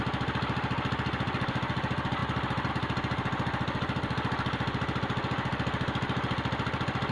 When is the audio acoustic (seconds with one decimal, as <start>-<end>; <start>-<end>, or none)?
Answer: 0.0-7.1